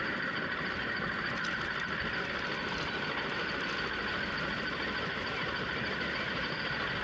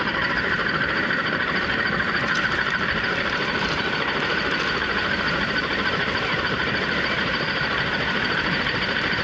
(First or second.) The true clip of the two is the first